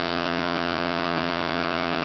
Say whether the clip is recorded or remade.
remade